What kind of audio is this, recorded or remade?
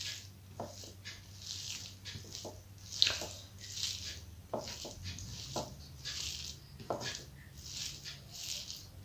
recorded